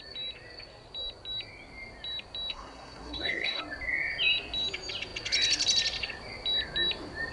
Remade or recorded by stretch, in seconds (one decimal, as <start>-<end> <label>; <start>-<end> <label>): 0.0-2.5 recorded; 2.5-3.6 remade; 3.6-7.3 recorded